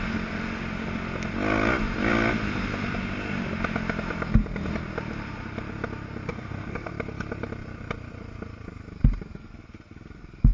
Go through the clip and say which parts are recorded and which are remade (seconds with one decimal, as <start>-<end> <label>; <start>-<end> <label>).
0.0-6.3 recorded; 6.3-6.9 remade; 6.9-10.5 recorded